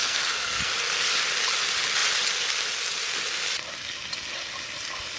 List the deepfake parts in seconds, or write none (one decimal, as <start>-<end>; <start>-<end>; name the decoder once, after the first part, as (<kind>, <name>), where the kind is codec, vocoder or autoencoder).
0.0-0.7 (codec, SNAC)